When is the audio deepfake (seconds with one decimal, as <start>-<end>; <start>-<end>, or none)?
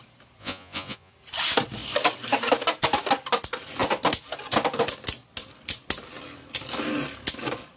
0.4-1.1